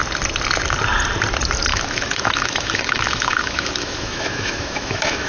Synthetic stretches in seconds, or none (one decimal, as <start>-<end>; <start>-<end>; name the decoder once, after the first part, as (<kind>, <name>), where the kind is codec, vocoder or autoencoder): 1.7-5.3 (autoencoder, DAC-VAE)